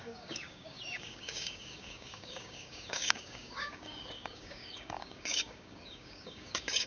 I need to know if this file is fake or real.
fake